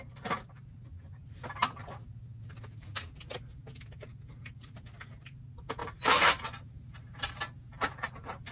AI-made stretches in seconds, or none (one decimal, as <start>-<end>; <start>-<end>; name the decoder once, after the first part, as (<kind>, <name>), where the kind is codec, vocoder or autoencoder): 5.8-7.3 (vocoder, BigVGAN v2); 7.7-8.5